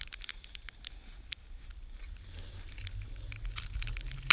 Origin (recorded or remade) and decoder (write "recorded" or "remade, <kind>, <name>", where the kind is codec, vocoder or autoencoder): recorded